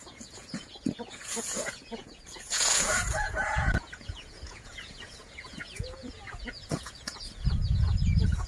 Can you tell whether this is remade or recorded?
remade